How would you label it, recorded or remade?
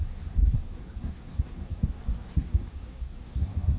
remade